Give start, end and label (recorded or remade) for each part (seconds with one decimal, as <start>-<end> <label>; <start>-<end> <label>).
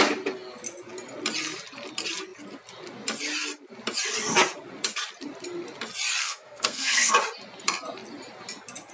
0.0-6.2 recorded; 6.2-7.1 remade; 7.1-8.9 recorded